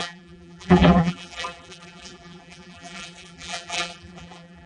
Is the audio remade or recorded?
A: remade